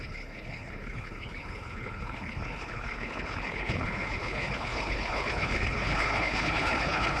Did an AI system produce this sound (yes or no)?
yes